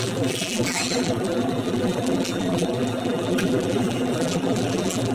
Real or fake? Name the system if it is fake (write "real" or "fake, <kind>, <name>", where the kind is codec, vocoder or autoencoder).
fake, vocoder, BigVGAN v2